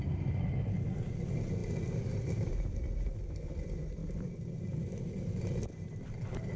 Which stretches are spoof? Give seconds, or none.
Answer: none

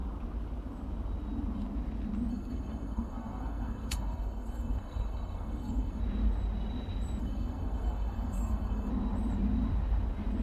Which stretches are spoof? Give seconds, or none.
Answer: 2.3-6.0 (codec, SNAC); 7.2-8.9

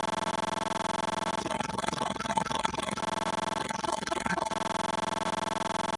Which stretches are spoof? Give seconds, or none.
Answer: 1.4-3.0 (codec, SNAC); 3.6-4.5

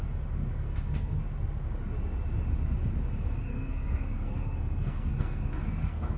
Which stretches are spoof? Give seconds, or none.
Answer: 0.5-1.2 (codec, SNAC); 3.4-6.2

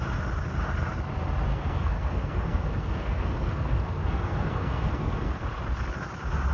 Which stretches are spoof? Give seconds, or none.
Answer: 1.5-5.4 (codec, SNAC)

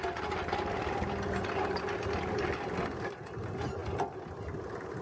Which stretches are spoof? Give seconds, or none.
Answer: none

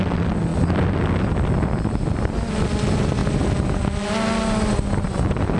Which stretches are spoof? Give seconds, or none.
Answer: none

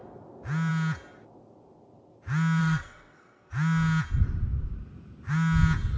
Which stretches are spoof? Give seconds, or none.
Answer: 2.6-3.5 (codec, SNAC)